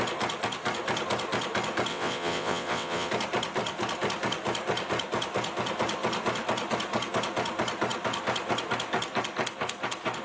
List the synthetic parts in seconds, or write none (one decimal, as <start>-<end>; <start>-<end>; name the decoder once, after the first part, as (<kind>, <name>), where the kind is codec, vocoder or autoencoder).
1.9-3.1 (vocoder, WaveNeXt)